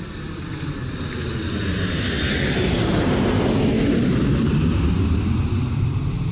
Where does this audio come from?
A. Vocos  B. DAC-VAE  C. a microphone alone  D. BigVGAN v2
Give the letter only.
C